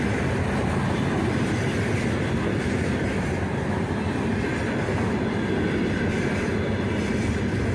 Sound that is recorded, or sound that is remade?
recorded